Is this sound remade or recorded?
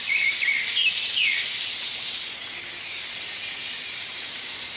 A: remade